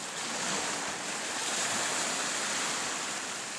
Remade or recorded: recorded